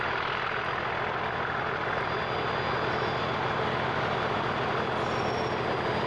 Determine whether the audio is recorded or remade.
recorded